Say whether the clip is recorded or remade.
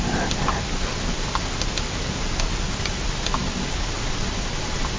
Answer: recorded